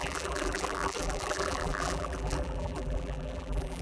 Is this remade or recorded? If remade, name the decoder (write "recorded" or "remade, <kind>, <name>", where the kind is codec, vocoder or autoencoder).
remade, vocoder, BigVGAN v2